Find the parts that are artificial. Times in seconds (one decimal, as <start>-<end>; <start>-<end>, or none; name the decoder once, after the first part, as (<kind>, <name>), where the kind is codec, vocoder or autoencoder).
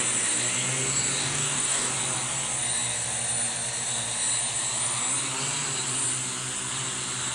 1.2-1.9 (codec, DAC)